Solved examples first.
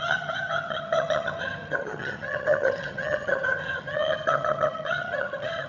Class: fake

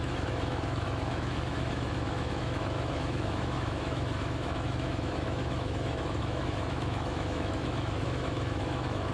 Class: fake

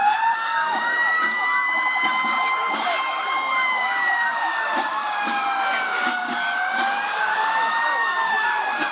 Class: fake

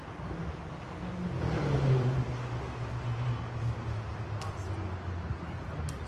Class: real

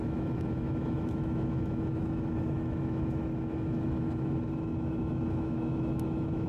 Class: fake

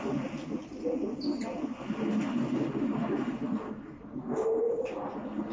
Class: real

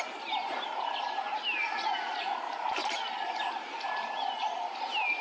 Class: real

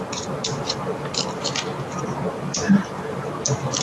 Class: real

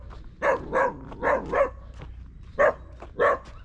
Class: real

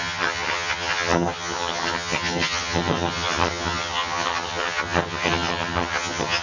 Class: fake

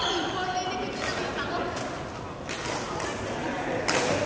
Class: real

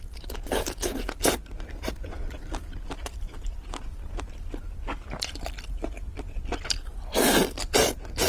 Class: real